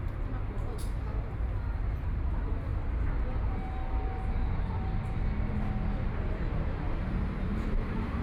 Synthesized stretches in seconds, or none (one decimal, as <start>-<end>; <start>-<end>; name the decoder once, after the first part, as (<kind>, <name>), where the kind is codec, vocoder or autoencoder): 0.0-2.7 (vocoder, BigVGAN v2); 7.0-8.2